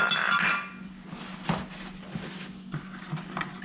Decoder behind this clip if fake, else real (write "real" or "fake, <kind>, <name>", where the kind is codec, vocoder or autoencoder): real